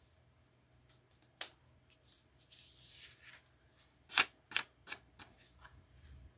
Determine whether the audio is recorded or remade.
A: recorded